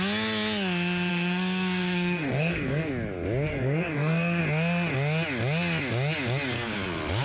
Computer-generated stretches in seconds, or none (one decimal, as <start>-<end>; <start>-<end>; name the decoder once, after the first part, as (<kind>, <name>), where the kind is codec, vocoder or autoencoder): 1.1-2.9 (codec, SNAC); 3.5-4.4